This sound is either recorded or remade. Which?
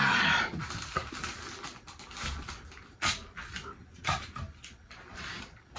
recorded